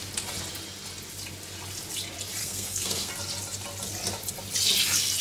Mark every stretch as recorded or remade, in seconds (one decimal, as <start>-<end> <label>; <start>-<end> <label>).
0.0-2.4 recorded; 2.4-3.1 remade; 3.1-5.2 recorded